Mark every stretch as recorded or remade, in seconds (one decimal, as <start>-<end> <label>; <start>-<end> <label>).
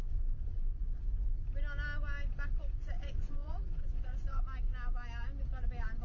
0.0-1.0 remade; 1.0-2.6 recorded; 2.6-4.4 remade; 4.4-6.0 recorded